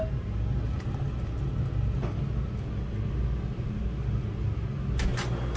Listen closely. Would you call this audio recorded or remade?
recorded